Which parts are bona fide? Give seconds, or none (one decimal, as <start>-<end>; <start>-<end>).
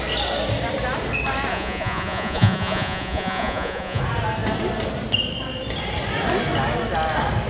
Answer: 0.0-1.5; 4.0-7.5